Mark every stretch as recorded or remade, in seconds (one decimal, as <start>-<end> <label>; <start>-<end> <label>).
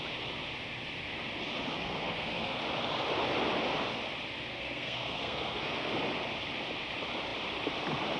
0.0-1.8 recorded; 1.8-2.6 remade; 2.6-4.5 recorded; 4.5-5.9 remade; 5.9-8.2 recorded